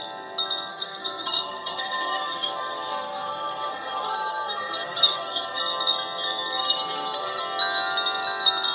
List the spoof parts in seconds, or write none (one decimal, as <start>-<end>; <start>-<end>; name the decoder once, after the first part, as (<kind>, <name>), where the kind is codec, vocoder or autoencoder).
0.7-5.6 (codec, SNAC); 6.6-7.4